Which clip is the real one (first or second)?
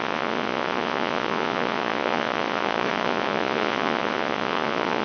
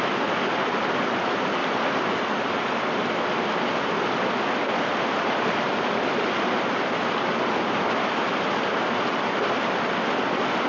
second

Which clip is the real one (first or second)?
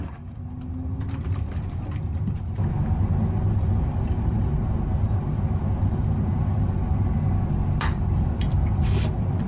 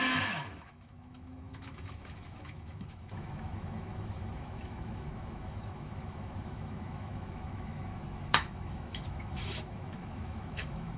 first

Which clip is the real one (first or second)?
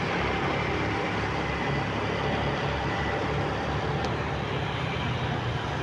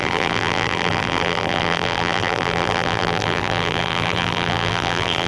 first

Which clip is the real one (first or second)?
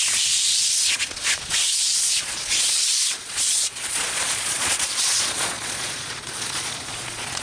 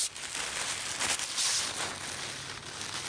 second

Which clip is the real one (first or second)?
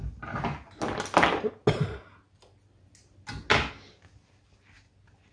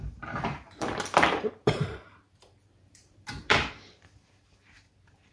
first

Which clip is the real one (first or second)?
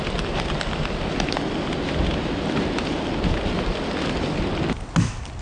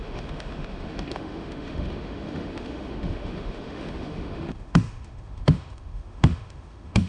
first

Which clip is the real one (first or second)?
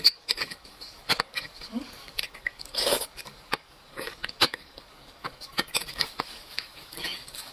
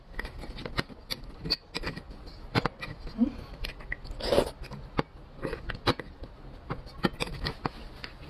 second